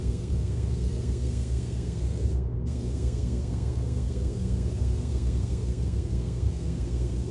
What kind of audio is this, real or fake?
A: fake